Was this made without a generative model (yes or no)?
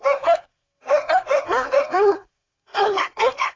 no